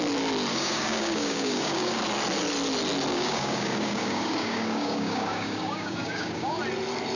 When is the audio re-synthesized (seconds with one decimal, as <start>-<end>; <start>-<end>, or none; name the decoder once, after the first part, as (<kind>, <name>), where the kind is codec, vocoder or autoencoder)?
0.5-2.0 (codec, DAC); 3.1-6.6